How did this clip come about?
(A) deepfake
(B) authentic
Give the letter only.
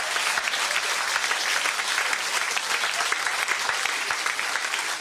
B